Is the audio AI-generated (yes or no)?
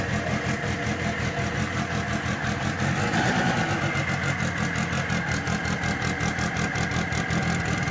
no